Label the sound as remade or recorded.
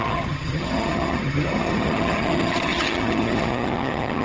remade